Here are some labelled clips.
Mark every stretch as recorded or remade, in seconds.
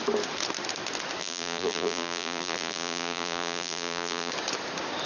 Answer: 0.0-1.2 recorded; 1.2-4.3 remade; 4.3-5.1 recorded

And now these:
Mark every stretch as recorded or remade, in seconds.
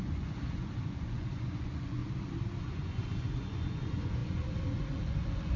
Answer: 0.0-2.0 remade; 2.0-2.6 recorded; 2.6-5.6 remade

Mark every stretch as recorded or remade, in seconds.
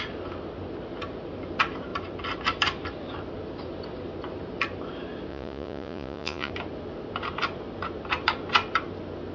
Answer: 0.0-5.3 recorded; 5.3-6.5 remade; 6.5-9.3 recorded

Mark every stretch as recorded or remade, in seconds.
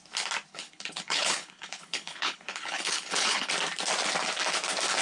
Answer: 0.0-0.5 recorded; 0.5-3.5 remade; 3.5-5.0 recorded